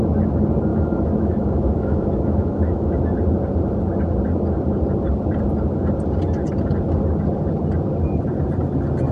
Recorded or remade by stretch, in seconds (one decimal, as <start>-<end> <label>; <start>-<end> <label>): 0.0-0.7 recorded; 0.7-3.0 remade; 3.0-9.1 recorded